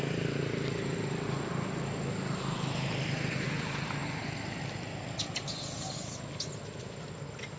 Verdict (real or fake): real